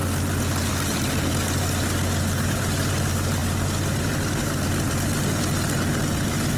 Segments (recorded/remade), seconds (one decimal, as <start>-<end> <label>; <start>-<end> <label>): 0.0-6.6 recorded